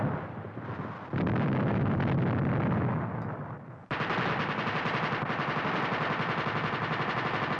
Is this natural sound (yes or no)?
yes